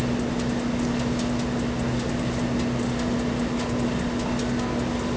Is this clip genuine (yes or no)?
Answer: yes